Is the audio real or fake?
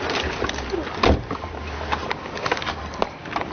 real